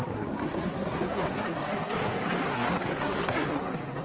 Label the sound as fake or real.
fake